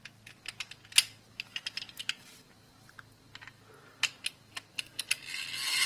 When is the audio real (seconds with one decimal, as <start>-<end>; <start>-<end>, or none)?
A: 0.0-5.9